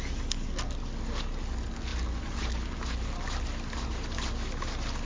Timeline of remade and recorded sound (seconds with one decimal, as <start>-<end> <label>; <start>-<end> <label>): 0.0-5.1 recorded

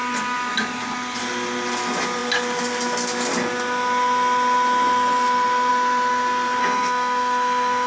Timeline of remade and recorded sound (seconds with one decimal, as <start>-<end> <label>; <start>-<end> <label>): 0.0-6.6 recorded; 6.6-7.9 remade

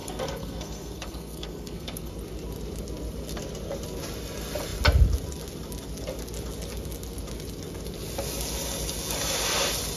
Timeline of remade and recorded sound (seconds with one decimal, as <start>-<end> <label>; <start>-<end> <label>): 0.0-2.1 remade; 2.1-10.0 recorded

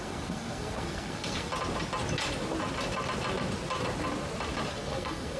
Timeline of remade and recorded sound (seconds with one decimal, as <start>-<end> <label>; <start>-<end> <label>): 0.0-1.5 remade; 1.5-4.7 recorded; 4.7-5.4 remade

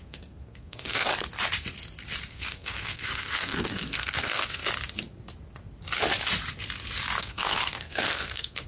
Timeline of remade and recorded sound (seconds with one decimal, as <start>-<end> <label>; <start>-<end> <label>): 0.0-1.1 remade; 1.1-2.3 recorded; 2.3-4.6 remade; 4.6-7.2 recorded; 7.2-8.7 remade

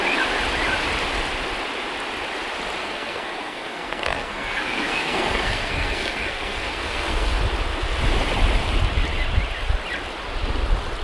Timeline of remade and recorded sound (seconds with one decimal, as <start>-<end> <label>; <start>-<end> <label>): 0.0-2.8 recorded; 2.8-7.4 remade; 7.4-11.0 recorded

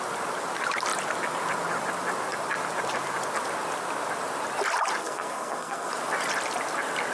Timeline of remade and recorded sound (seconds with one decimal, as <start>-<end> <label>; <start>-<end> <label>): 0.0-5.0 recorded; 5.0-5.9 remade; 5.9-7.1 recorded

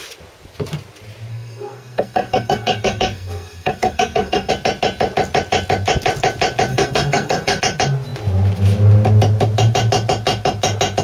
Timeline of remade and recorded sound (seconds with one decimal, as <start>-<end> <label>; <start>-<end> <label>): 0.0-1.3 recorded; 1.3-4.5 remade; 4.5-6.7 recorded; 6.7-7.6 remade; 7.6-11.0 recorded